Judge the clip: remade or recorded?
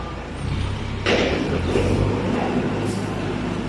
recorded